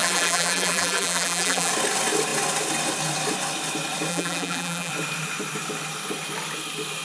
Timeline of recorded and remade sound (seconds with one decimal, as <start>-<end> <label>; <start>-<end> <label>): 0.0-1.7 remade; 1.7-4.1 recorded; 4.1-4.9 remade; 4.9-7.0 recorded